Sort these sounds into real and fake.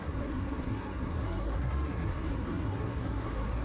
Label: fake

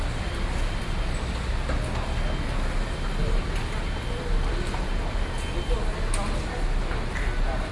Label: real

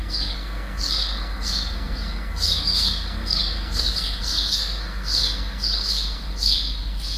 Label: fake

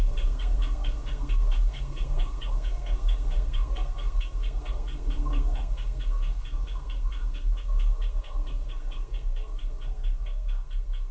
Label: fake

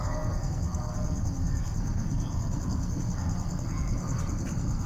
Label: fake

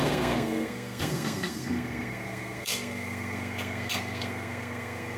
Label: fake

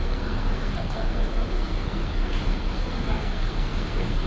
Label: fake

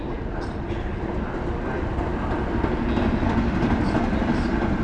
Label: real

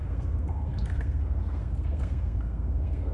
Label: fake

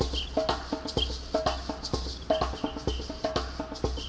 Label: real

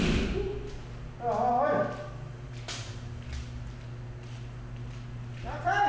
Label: real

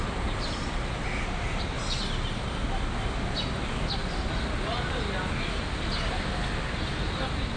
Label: real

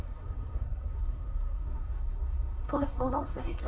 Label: fake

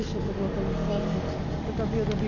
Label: real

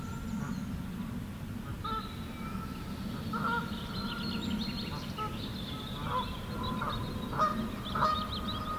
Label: real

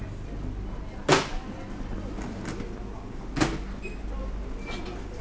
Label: real